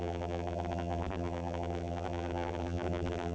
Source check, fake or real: fake